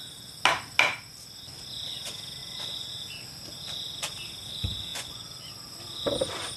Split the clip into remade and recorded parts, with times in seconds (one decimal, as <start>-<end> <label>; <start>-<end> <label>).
0.0-2.4 recorded; 2.4-2.9 remade; 2.9-4.9 recorded; 4.9-5.5 remade; 5.5-6.6 recorded